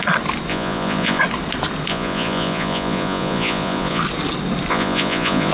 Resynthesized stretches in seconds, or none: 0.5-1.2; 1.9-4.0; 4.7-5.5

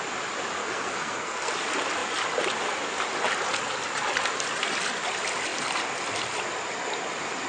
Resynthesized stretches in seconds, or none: 0.6-1.5

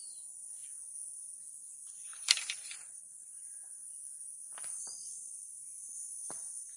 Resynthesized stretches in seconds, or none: 0.0-0.6; 1.8-3.8; 4.8-6.8

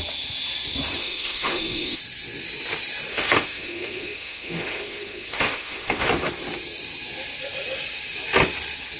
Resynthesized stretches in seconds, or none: 1.0-2.0; 3.1-6.1

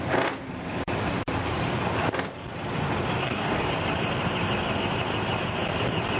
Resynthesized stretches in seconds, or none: 3.2-3.7